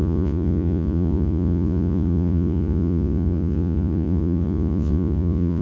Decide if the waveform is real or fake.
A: fake